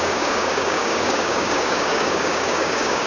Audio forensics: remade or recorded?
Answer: remade